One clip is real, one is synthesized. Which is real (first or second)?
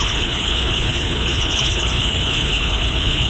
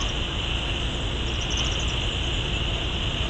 second